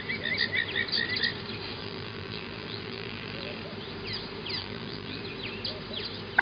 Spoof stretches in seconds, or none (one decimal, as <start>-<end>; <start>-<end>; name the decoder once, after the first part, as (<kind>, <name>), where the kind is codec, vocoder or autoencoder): 1.8-3.5 (vocoder, BigVGAN v2); 4.6-5.2

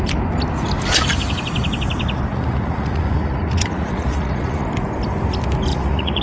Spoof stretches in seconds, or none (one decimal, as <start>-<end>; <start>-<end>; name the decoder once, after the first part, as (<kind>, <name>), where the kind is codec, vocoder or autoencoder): 2.3-4.7 (vocoder, Vocos); 5.7-6.2

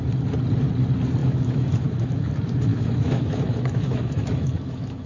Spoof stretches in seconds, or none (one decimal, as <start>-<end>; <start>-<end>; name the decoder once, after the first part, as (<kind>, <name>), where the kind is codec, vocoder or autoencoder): 1.2-2.3 (autoencoder, DAC-VAE); 2.7-5.1

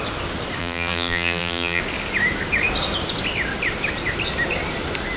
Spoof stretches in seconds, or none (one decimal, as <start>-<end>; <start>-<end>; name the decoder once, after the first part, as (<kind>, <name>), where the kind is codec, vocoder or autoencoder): 0.6-1.8 (vocoder, BigVGAN v2)

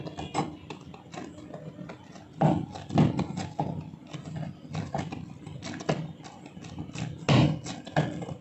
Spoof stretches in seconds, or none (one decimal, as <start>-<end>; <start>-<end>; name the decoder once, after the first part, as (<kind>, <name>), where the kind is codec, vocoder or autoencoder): none

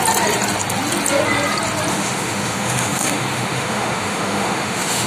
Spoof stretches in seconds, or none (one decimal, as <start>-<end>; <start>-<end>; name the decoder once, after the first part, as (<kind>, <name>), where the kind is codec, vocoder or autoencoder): 1.9-5.1 (autoencoder, DAC-VAE)